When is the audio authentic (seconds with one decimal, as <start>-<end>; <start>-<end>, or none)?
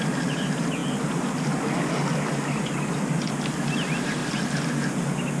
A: 0.0-5.4